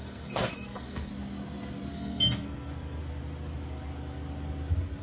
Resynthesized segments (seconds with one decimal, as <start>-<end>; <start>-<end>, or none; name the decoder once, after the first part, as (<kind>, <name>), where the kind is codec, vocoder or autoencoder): 0.0-1.1 (codec, SNAC); 1.9-3.0